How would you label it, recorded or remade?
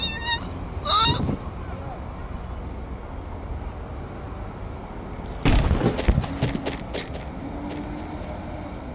recorded